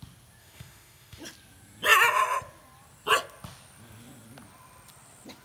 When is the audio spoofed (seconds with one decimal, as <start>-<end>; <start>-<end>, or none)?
0.4-1.2